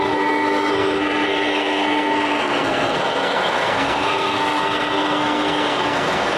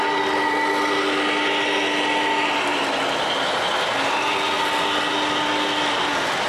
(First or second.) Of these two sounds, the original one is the second